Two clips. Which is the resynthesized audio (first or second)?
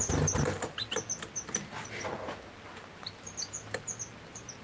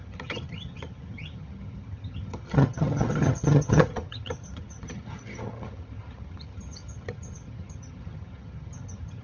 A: second